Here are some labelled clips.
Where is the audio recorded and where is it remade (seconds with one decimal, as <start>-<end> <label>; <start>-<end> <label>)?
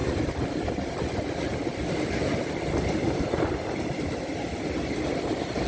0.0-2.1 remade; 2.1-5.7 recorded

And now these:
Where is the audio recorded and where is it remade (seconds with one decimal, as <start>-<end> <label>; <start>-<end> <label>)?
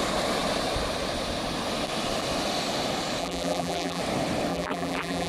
0.0-3.2 recorded; 3.2-4.0 remade; 4.0-4.5 recorded; 4.5-5.3 remade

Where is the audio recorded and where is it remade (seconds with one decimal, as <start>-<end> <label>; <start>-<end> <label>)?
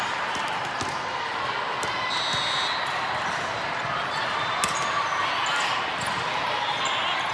0.0-7.3 recorded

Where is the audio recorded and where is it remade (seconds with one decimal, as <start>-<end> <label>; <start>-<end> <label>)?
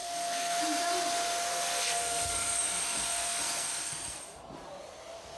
0.0-0.6 remade; 0.6-1.5 recorded; 1.5-4.2 remade; 4.2-5.4 recorded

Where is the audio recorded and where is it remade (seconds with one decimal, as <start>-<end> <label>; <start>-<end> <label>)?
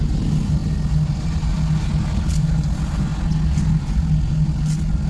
0.0-5.1 recorded